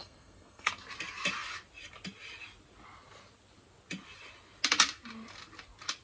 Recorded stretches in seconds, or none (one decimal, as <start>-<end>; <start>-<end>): 0.7-6.0